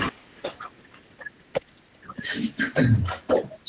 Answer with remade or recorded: recorded